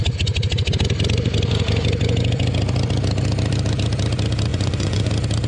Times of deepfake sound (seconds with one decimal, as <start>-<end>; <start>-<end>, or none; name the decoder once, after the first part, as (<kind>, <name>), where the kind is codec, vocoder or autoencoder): 4.5-5.1 (vocoder, Vocos)